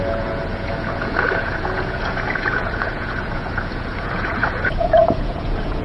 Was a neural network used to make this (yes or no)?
yes